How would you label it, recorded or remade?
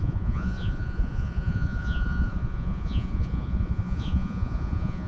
remade